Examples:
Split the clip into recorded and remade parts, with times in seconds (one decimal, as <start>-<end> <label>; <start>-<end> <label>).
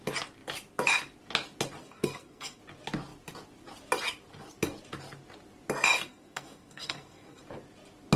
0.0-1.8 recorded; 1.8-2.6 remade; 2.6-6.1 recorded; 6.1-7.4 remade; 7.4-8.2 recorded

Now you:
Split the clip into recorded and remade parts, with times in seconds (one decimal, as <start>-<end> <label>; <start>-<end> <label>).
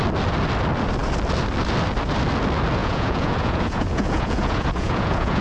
0.0-2.8 recorded; 2.8-5.4 remade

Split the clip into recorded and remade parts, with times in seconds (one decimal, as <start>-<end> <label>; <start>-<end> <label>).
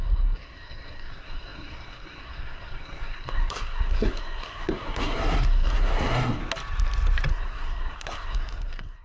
0.0-6.4 remade; 6.4-7.3 recorded; 7.3-9.0 remade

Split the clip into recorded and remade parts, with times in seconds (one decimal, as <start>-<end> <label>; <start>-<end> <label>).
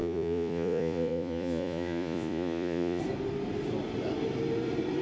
0.0-3.0 remade; 3.0-5.0 recorded